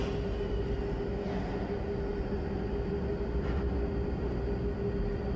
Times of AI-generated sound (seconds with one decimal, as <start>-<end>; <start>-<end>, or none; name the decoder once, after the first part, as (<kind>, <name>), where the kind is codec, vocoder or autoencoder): none

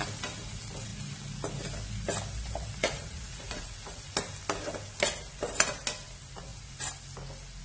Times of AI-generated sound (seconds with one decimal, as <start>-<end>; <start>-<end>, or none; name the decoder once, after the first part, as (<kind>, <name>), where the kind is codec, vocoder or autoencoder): 2.8-4.1 (vocoder, Vocos)

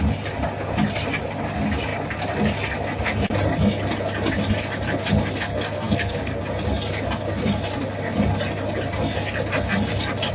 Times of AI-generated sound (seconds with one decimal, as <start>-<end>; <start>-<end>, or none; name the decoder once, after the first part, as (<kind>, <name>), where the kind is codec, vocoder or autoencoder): 5.5-6.4 (codec, SNAC)

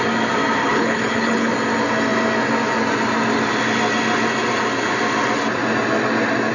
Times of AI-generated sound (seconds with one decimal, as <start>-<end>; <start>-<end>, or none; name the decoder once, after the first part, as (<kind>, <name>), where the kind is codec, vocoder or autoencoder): 0.6-1.5 (codec, HILCodec)

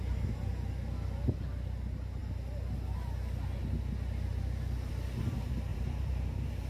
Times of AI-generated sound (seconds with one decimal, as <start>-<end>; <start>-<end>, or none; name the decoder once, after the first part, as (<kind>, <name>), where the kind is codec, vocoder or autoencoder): 5.7-6.7 (vocoder, BigVGAN v2)

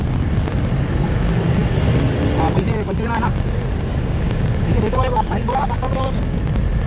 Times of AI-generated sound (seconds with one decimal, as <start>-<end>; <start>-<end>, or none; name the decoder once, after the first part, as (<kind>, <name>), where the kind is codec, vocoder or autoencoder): 3.9-6.4 (codec, DAC)

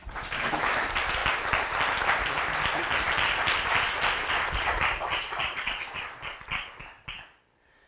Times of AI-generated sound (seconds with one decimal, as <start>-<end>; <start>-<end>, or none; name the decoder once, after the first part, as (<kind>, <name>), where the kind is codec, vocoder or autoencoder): 0.0-1.2 (vocoder, BigVGAN v2); 4.3-7.9

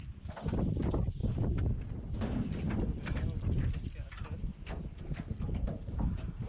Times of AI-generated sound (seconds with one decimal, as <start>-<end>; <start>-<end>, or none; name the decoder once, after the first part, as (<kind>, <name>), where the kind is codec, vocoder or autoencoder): 1.2-3.0 (vocoder, BigVGAN v2)